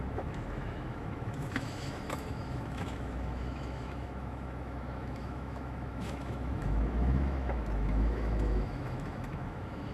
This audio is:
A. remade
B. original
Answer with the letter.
A